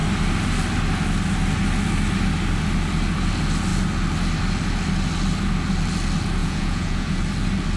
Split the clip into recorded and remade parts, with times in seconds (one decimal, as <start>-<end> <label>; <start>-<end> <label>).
0.0-6.4 recorded; 6.4-7.2 remade; 7.2-7.8 recorded